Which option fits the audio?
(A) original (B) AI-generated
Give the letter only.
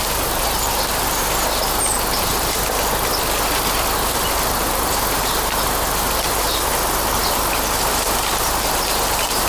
B